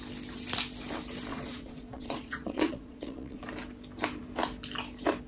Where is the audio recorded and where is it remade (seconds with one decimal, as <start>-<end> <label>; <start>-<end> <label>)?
0.0-1.3 recorded; 1.3-3.4 remade; 3.4-5.3 recorded